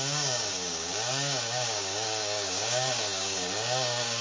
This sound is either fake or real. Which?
fake